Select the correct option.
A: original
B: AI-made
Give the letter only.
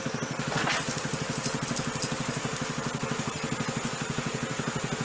A